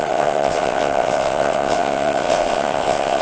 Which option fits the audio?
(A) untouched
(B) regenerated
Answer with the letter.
B